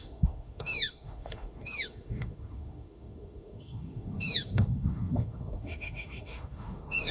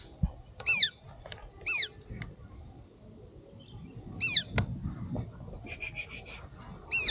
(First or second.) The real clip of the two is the second